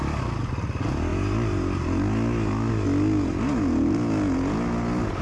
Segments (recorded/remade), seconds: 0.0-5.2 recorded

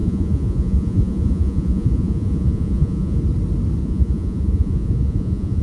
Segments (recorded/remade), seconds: 0.0-3.2 remade; 3.2-3.8 recorded; 3.8-5.6 remade

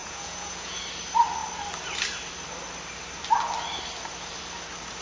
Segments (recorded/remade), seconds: 0.0-0.8 remade; 0.8-5.0 recorded

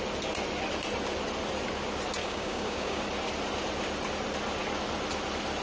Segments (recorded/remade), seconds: 0.0-2.2 recorded; 2.2-3.0 remade; 3.0-5.6 recorded

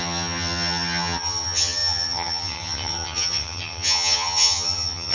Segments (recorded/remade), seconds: 0.0-5.1 remade

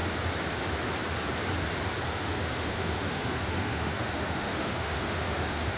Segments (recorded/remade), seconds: 0.0-2.1 recorded; 2.1-5.8 remade

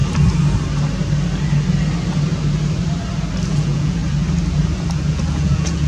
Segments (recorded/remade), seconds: 0.0-3.5 recorded; 3.5-4.0 remade; 4.0-5.1 recorded; 5.1-5.9 remade